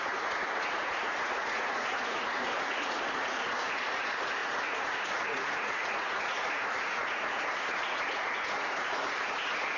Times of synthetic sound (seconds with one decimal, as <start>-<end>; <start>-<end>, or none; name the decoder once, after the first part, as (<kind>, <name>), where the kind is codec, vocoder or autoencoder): 0.0-9.8 (vocoder, Vocos)